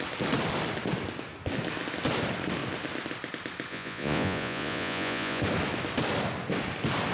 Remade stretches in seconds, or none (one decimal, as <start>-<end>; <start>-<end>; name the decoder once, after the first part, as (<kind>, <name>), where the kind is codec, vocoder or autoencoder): 3.7-5.4 (vocoder, Vocos)